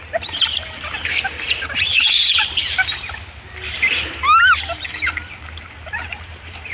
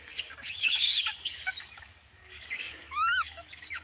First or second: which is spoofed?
second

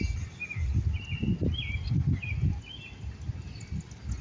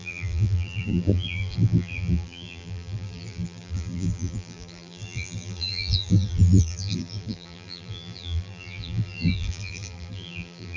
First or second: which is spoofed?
second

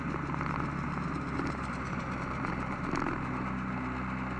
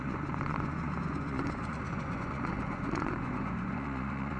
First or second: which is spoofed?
second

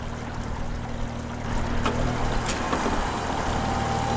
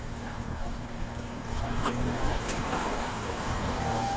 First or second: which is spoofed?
second